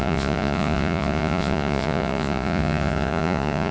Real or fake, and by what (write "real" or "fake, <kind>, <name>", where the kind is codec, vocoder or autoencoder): fake, vocoder, Vocos